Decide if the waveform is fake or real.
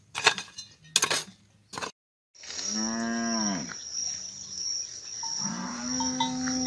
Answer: real